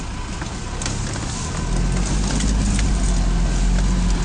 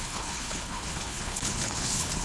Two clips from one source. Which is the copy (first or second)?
second